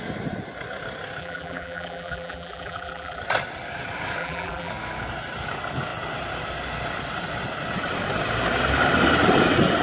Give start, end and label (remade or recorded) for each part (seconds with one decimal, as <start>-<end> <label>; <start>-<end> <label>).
0.0-1.2 recorded; 1.2-3.2 remade; 3.2-4.2 recorded; 4.2-4.7 remade; 4.7-9.8 recorded